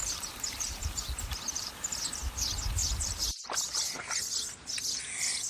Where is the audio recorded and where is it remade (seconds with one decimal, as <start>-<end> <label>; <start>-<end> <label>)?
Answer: 0.0-1.7 remade; 1.7-2.8 recorded; 2.8-3.4 remade; 3.4-5.5 recorded